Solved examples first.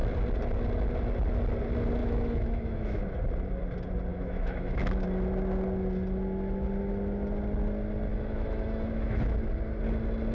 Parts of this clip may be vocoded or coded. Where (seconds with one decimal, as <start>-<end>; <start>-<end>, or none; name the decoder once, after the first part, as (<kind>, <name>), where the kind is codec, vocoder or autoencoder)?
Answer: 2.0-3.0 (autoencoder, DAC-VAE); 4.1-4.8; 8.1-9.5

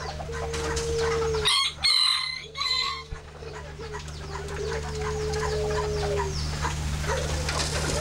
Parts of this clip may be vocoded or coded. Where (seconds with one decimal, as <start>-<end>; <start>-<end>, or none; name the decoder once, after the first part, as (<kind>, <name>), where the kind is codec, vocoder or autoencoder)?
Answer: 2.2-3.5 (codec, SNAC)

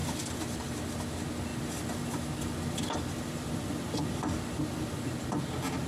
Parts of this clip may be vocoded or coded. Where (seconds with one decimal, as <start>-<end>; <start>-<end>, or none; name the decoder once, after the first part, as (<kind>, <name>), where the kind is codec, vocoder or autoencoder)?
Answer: none

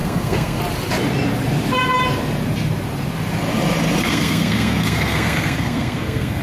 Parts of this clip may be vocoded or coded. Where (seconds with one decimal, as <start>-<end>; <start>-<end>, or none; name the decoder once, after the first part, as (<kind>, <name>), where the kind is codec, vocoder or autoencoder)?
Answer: 0.0-0.6 (codec, SNAC); 4.0-6.4

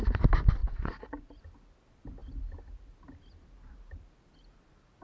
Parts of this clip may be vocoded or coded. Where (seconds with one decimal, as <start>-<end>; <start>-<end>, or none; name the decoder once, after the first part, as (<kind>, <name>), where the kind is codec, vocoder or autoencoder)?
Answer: 0.6-1.4 (vocoder, Vocos)

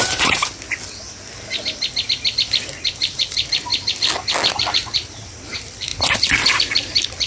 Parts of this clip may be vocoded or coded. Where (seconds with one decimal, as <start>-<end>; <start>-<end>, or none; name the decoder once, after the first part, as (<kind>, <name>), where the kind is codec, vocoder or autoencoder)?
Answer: 0.0-0.4 (vocoder, BigVGAN v2); 2.9-3.7; 4.5-5.9; 6.6-7.3